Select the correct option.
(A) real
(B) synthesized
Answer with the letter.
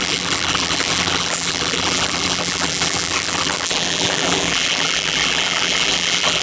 B